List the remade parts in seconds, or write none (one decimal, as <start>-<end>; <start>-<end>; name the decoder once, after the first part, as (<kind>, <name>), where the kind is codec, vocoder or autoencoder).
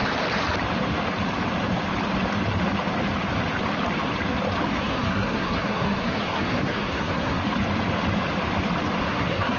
4.8-7.4 (codec, SNAC); 9.0-9.6